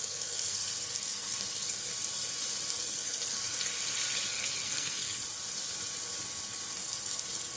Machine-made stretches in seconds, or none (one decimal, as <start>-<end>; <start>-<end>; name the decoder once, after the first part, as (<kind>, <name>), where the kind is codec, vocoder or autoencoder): 0.0-1.9 (codec, SNAC); 2.7-3.7; 4.3-5.2; 6.7-7.6